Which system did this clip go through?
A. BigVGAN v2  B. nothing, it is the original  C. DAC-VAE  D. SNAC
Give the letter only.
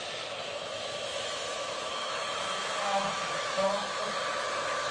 C